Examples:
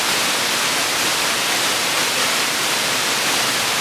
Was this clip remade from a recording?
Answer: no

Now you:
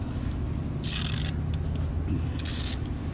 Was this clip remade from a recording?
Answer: no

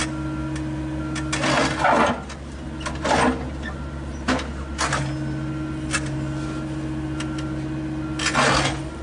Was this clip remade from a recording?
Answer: no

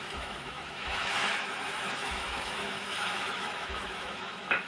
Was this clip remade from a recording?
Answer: yes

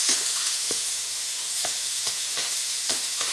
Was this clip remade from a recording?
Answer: yes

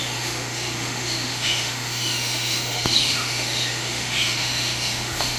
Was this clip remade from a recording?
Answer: yes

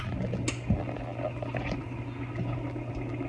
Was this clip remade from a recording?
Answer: no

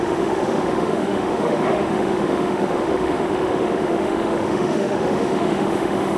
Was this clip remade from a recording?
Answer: yes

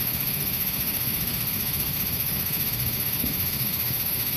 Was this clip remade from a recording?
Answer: yes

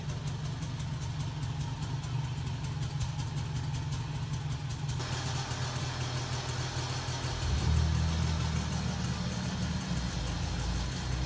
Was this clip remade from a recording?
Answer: no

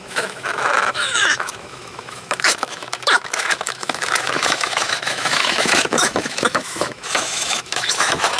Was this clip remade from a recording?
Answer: yes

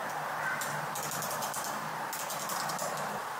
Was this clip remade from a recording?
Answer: no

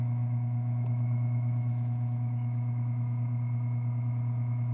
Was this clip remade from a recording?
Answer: yes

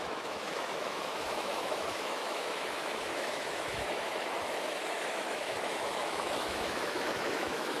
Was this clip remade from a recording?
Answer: yes